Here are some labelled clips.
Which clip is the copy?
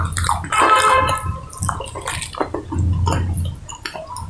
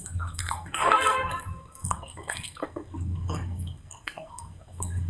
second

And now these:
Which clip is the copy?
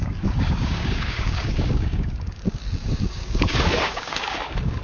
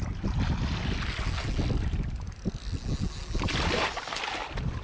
first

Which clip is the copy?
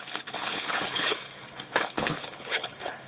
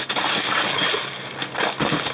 first